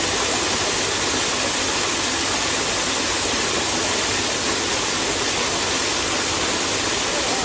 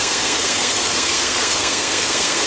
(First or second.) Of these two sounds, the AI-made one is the second